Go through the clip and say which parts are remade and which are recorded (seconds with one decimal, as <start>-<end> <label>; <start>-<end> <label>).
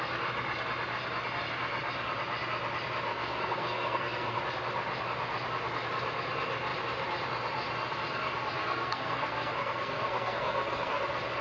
0.0-3.1 recorded; 3.1-4.4 remade; 4.4-8.6 recorded; 8.6-11.0 remade; 11.0-11.4 recorded